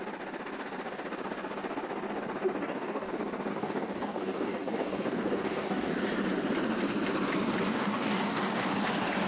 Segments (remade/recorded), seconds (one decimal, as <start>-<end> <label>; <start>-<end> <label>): 0.0-2.6 recorded; 2.6-3.1 remade; 3.1-3.5 recorded; 3.5-6.1 remade; 6.1-7.7 recorded; 7.7-8.7 remade; 8.7-9.3 recorded